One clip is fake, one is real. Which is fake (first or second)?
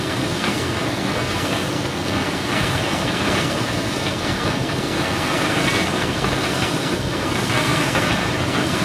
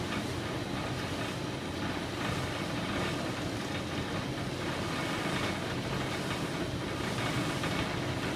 first